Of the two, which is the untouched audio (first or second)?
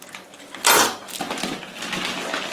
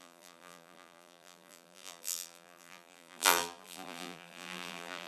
first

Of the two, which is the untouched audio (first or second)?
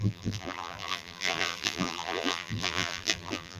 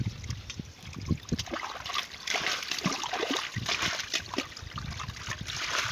second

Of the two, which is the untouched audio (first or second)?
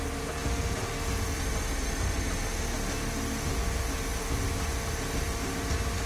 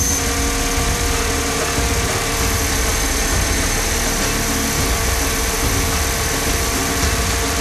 first